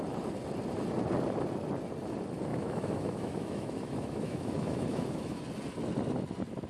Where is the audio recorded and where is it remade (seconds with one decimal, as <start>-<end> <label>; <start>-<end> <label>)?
0.0-2.5 recorded; 2.5-5.4 remade; 5.4-6.7 recorded